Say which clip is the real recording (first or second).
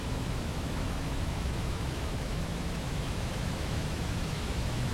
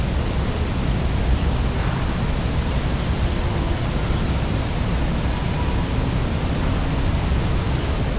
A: second